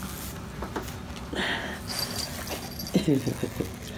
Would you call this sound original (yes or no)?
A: yes